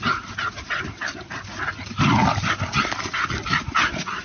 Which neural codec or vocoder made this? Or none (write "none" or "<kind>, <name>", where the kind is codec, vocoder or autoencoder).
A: none